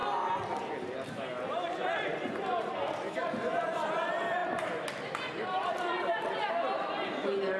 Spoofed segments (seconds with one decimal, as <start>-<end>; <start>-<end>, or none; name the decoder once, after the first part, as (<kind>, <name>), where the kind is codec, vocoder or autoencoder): 0.0-0.7 (vocoder, BigVGAN v2); 2.1-3.6; 4.4-6.5